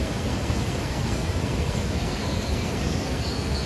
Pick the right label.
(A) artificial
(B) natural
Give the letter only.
A